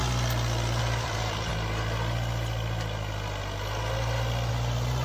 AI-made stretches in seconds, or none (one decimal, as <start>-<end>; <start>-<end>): 0.8-1.5; 4.5-5.0